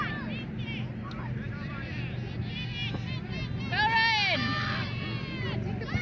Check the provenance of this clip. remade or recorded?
recorded